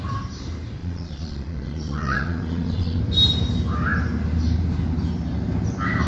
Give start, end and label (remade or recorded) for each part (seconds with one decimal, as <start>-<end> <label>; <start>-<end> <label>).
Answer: 0.0-0.8 recorded; 0.8-3.0 remade; 3.0-6.1 recorded